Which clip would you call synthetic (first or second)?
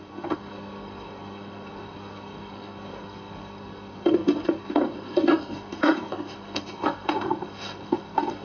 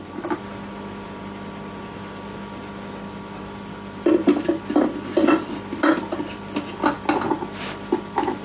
first